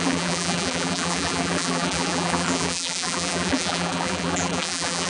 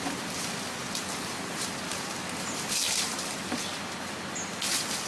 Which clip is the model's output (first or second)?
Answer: first